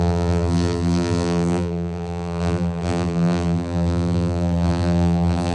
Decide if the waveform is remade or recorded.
remade